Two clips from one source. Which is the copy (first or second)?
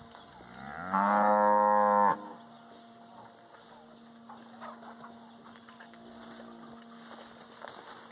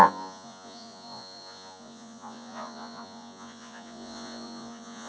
second